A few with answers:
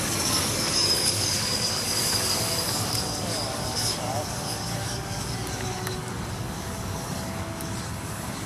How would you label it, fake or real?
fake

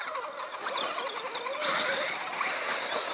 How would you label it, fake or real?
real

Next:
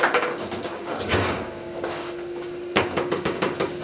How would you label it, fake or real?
fake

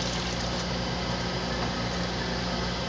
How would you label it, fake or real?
real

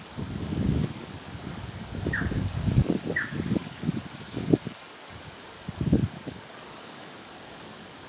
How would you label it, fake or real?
fake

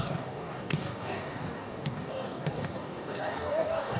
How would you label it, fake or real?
fake